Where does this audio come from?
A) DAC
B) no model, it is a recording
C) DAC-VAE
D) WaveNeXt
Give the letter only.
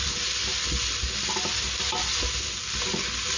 B